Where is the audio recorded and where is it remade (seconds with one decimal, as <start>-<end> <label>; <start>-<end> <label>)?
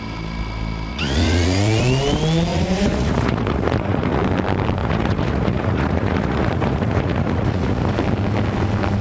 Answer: 0.0-0.9 recorded; 0.9-1.8 remade; 1.8-2.5 recorded; 2.5-4.2 remade; 4.2-4.8 recorded; 4.8-7.9 remade; 7.9-9.0 recorded